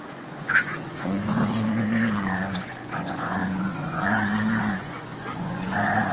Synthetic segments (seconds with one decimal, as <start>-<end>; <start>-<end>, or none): 0.0-6.1